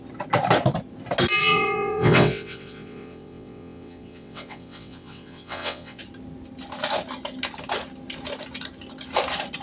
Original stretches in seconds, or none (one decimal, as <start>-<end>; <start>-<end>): 0.0-1.4; 6.0-9.6